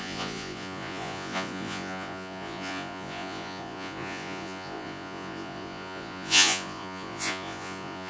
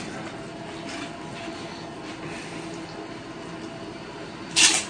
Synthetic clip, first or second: first